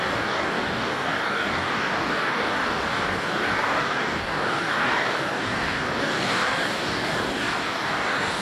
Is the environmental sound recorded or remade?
remade